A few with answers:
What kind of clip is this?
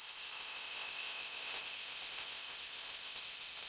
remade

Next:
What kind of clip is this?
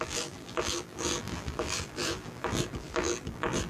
remade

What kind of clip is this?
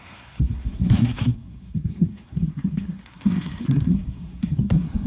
remade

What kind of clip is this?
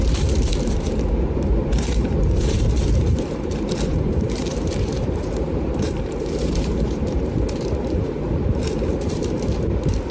remade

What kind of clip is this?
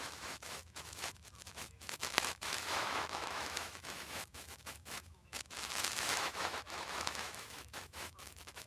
remade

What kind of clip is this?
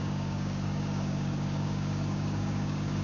remade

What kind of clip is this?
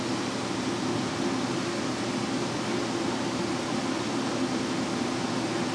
recorded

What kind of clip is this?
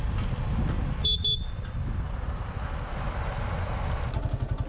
recorded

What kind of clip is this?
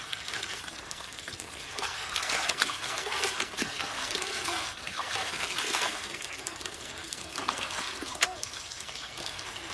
remade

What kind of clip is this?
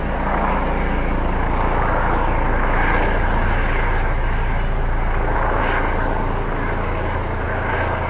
recorded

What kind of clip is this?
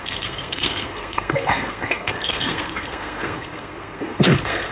remade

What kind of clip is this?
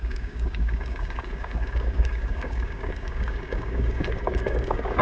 remade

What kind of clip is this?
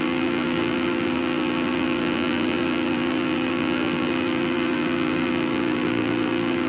remade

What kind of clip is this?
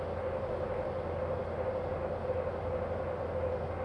recorded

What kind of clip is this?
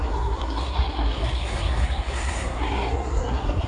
remade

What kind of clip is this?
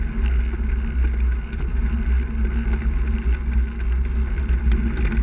recorded